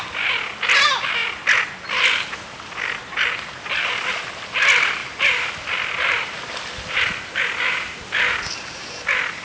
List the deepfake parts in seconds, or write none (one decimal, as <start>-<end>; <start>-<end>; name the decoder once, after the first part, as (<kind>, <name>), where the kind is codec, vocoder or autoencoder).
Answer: none